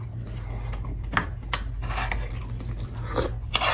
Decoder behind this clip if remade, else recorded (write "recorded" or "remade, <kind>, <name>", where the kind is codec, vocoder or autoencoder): recorded